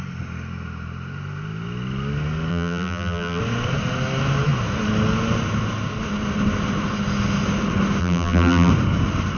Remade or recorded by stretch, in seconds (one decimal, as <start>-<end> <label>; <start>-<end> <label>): 0.0-2.5 recorded; 2.5-3.4 remade; 3.4-8.0 recorded; 8.0-8.7 remade; 8.7-9.4 recorded